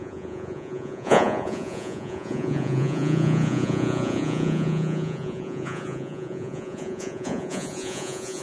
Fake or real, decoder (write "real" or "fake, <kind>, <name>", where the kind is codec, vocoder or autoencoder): fake, vocoder, Vocos